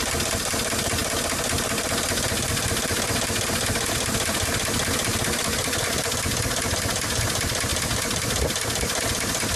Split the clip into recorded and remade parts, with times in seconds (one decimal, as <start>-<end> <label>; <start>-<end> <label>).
0.0-9.6 recorded